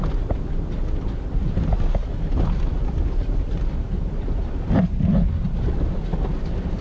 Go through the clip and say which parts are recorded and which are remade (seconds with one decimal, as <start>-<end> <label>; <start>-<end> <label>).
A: 0.0-6.8 recorded